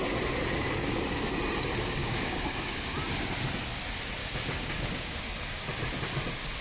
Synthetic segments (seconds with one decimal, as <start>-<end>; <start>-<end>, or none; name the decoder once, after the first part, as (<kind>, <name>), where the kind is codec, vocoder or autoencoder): 2.0-2.8 (codec, DAC); 4.2-5.2